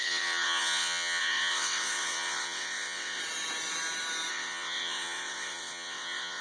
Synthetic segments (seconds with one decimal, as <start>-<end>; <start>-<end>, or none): 0.0-3.2; 4.3-6.4